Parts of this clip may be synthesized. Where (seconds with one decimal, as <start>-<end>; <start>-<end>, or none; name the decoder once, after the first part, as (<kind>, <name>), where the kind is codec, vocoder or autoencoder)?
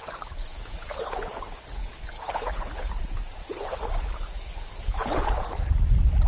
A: 0.0-3.0 (codec, HILCodec); 3.4-5.7